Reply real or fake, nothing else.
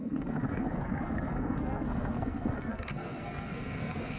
fake